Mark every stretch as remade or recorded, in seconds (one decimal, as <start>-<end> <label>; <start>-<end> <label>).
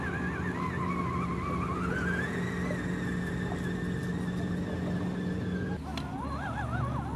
0.0-7.2 recorded